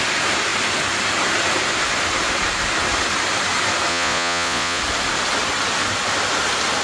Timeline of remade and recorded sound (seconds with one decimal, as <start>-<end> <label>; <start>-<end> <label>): 0.0-3.9 recorded; 3.9-4.8 remade; 4.8-6.8 recorded